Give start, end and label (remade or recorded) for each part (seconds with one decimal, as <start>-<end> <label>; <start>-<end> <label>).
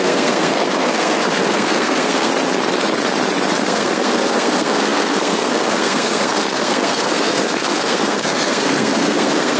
0.0-2.3 remade; 2.3-3.6 recorded; 3.6-9.6 remade